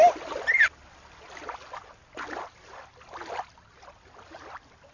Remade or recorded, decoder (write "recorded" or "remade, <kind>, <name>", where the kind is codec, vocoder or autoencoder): recorded